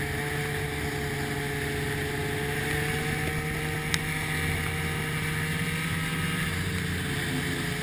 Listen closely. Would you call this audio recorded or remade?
recorded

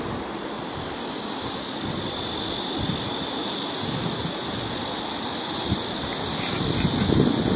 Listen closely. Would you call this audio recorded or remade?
recorded